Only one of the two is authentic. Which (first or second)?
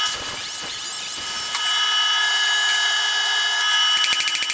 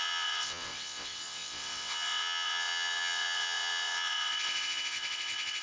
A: first